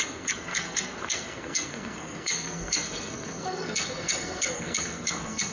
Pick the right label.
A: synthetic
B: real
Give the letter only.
A